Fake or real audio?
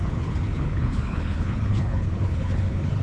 fake